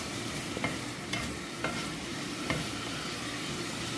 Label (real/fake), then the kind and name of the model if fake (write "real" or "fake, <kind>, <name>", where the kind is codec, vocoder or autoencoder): fake, vocoder, BigVGAN v2